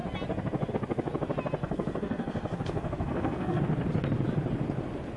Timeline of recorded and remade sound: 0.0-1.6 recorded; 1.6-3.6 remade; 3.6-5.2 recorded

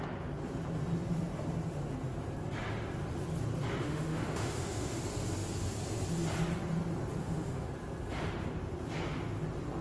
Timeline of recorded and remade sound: 0.0-3.8 recorded; 3.8-5.0 remade; 5.0-7.2 recorded; 7.2-7.7 remade; 7.7-9.8 recorded

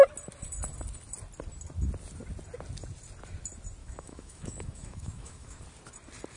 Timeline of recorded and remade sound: 0.0-3.8 recorded; 3.8-5.6 remade; 5.6-6.4 recorded

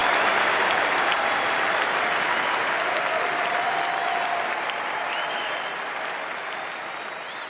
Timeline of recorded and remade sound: 0.0-7.5 recorded